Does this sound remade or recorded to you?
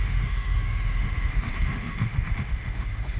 remade